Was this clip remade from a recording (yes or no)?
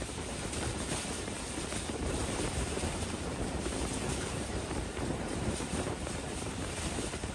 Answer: yes